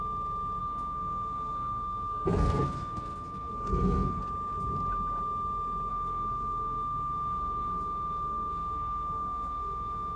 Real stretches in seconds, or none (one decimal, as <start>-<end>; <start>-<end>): 0.0-0.6; 4.2-5.9